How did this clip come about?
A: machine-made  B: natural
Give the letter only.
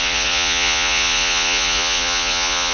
A